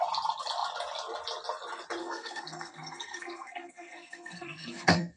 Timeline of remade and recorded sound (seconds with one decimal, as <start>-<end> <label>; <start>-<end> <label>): 0.0-2.0 recorded; 2.0-5.2 remade